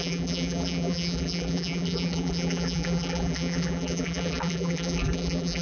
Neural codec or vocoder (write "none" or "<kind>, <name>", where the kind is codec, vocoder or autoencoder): vocoder, BigVGAN v2